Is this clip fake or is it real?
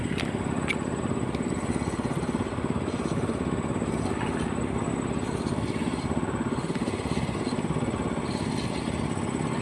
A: real